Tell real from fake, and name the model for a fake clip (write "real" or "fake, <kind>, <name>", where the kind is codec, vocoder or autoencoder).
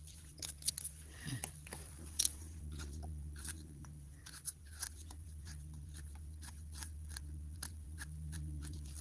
fake, vocoder, WaveNeXt